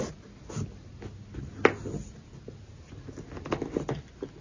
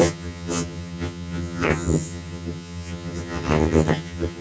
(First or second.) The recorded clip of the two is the first